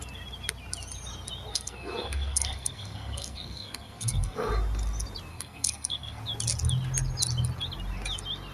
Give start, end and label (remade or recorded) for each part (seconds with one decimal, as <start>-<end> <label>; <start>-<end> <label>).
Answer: 0.0-1.5 recorded; 1.5-4.5 remade; 4.5-5.3 recorded; 5.3-6.2 remade; 6.2-8.5 recorded